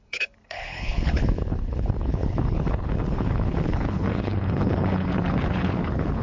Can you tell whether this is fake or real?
fake